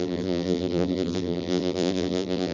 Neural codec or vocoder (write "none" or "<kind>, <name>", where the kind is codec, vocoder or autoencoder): vocoder, BigVGAN v2